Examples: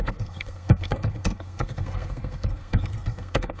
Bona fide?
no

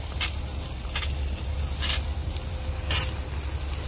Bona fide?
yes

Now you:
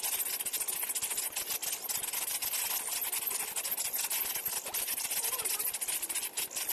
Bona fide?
yes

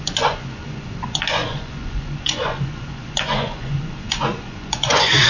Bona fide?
no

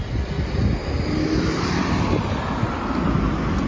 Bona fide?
yes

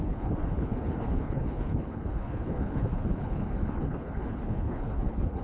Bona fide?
no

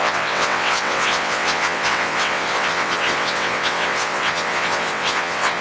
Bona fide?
no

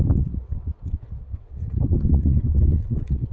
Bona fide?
no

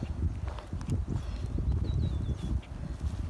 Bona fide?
yes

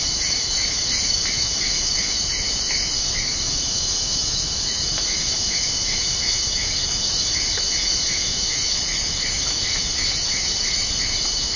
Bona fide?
no